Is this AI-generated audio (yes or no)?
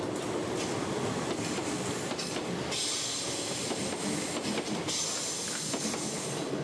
no